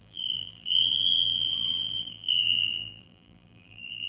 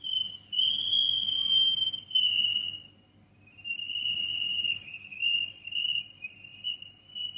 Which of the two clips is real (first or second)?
second